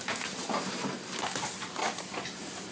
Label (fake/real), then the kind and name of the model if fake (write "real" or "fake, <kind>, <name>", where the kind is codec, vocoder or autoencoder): real